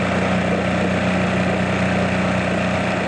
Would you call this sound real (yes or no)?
yes